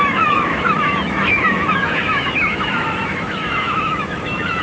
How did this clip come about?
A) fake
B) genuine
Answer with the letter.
A